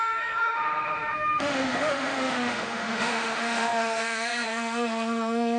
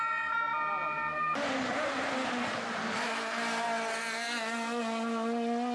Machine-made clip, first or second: first